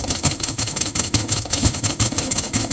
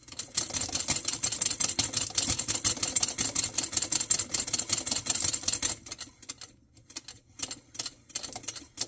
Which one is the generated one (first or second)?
first